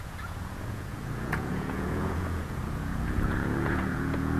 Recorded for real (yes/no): no